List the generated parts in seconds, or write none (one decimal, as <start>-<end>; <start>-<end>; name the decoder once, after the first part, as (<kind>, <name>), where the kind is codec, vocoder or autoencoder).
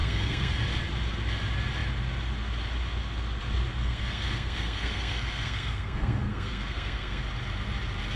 0.0-0.6 (codec, SNAC); 3.8-7.2